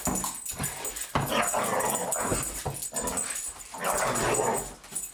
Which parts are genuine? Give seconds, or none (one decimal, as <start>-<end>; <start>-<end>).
0.0-5.1